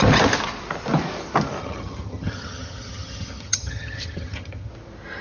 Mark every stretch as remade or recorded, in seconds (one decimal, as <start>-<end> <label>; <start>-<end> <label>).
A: 0.0-1.6 recorded; 1.6-4.7 remade; 4.7-5.2 recorded